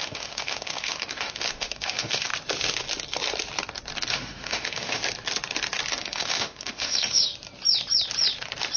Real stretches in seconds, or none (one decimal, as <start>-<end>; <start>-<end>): 2.3-4.1; 5.0-5.9; 7.3-8.8